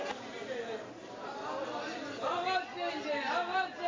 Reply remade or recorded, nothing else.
recorded